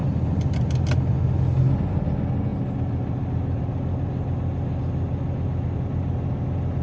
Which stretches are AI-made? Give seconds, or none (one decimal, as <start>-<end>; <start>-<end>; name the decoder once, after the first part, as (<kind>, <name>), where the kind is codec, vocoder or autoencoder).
none